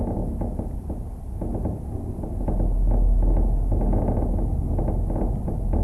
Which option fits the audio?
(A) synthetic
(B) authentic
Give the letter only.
B